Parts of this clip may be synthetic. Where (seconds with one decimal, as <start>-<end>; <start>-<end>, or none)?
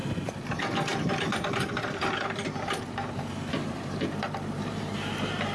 1.0-5.5